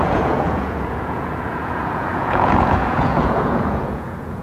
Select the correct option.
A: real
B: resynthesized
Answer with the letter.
B